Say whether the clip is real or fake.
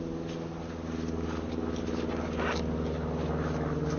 real